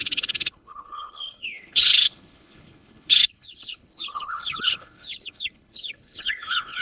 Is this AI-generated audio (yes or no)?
yes